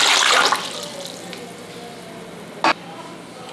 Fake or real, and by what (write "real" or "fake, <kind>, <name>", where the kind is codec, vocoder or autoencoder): real